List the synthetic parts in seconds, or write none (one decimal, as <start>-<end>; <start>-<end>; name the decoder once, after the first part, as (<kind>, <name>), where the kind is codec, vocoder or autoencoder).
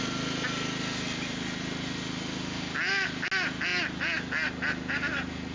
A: none